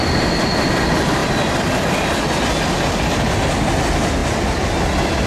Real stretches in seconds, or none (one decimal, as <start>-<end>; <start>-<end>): 0.0-5.3